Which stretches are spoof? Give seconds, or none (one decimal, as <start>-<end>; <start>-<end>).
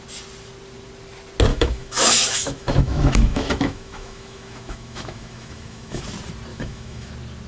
1.5-6.0; 6.5-7.1